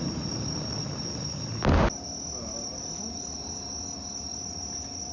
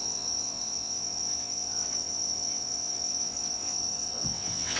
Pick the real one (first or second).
first